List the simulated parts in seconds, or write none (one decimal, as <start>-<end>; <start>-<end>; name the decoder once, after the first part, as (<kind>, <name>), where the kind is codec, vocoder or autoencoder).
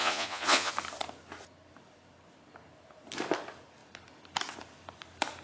0.0-0.7 (vocoder, Vocos)